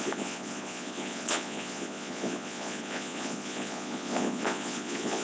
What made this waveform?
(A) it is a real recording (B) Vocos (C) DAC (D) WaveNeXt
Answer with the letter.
B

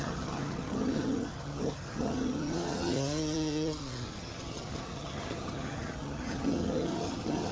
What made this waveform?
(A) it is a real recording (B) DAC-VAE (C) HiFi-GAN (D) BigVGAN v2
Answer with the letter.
C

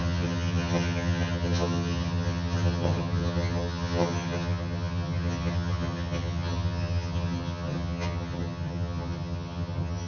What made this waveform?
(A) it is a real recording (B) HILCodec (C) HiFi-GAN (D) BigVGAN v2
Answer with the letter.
C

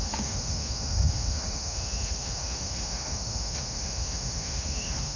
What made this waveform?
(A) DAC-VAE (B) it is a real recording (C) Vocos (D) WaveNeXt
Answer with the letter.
A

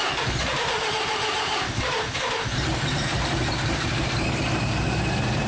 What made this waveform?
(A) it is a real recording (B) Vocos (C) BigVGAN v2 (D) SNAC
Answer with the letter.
C